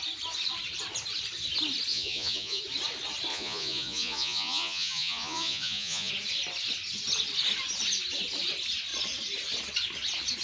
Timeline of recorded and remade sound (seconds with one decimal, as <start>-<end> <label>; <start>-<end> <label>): 0.0-1.9 recorded; 1.9-2.6 remade; 2.6-3.3 recorded; 3.3-6.1 remade; 6.1-10.4 recorded